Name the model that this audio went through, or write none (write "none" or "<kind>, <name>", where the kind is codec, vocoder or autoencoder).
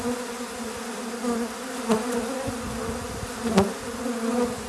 none